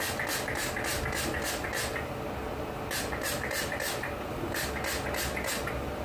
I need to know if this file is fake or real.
real